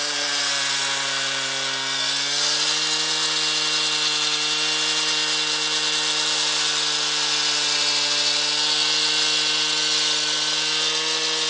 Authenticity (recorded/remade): recorded